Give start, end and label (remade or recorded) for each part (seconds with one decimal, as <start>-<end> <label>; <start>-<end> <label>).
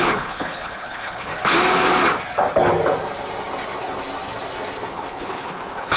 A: 0.0-1.3 remade; 1.3-4.9 recorded; 4.9-6.0 remade